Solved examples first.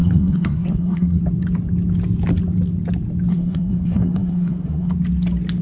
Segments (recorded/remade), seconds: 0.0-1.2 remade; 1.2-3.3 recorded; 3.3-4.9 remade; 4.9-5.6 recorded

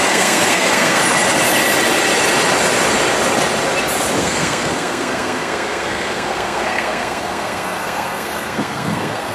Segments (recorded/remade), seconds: 0.0-1.0 remade; 1.0-4.2 recorded; 4.2-9.3 remade

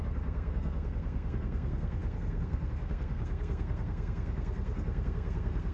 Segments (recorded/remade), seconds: 0.0-5.7 remade